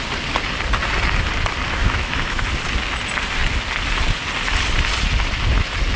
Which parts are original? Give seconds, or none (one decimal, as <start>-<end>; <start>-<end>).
0.0-1.8; 2.5-6.0

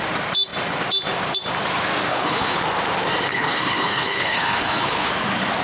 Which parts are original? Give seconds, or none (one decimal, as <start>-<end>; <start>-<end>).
0.0-2.1; 2.6-3.3; 5.1-5.6

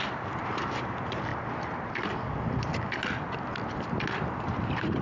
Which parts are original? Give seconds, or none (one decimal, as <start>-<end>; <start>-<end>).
1.3-4.3

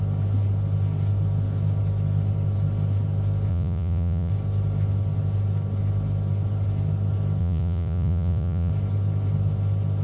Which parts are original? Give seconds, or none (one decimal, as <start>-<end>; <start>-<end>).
0.0-3.5; 4.3-7.4; 8.7-10.0

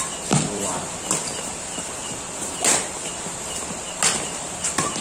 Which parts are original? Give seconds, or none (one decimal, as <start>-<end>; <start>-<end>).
0.7-3.2

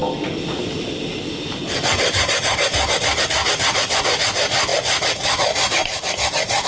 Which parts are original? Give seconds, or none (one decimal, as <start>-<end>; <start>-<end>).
0.0-6.7